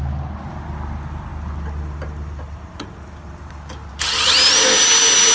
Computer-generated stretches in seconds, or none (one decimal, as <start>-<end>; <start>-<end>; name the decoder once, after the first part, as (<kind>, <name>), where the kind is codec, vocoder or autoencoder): none